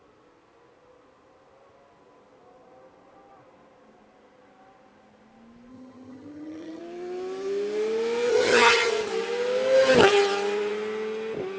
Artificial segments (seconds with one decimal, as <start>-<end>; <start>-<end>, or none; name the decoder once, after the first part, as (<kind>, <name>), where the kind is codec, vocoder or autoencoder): 5.7-6.8 (vocoder, HiFi-GAN); 8.3-8.9